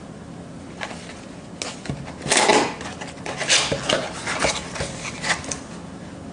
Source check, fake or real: real